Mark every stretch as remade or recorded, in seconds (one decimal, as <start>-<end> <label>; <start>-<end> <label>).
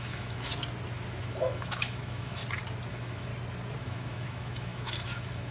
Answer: 0.0-0.5 remade; 0.5-1.2 recorded; 1.2-2.4 remade; 2.4-2.9 recorded; 2.9-3.3 remade; 3.3-3.8 recorded; 3.8-5.5 remade